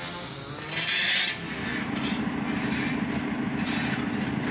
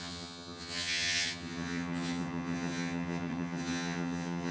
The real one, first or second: first